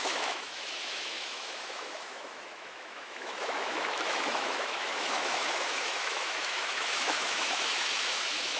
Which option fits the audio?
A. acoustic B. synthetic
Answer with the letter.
B